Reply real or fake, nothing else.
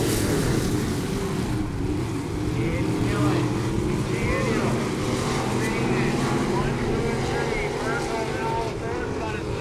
real